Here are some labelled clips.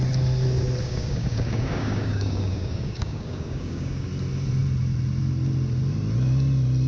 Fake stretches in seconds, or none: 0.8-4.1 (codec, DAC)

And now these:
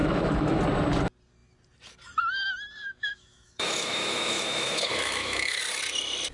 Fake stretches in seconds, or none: 0.0-0.6 (autoencoder, DAC-VAE); 2.8-5.6

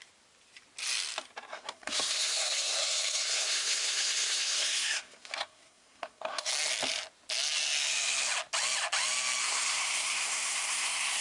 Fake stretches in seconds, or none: 1.5-6.5 (codec, SNAC); 9.4-11.2